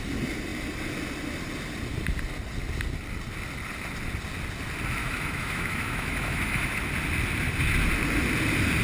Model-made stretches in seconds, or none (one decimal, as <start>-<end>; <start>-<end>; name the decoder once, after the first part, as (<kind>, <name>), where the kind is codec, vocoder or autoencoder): 5.0-6.8 (autoencoder, DAC-VAE)